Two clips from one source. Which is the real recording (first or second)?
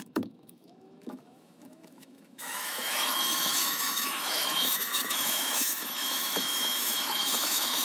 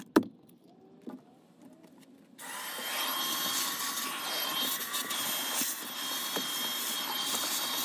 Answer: second